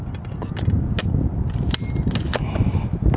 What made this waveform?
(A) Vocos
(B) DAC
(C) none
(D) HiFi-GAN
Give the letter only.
C